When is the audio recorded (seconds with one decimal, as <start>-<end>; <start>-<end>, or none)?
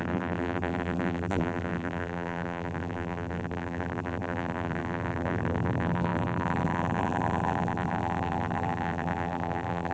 none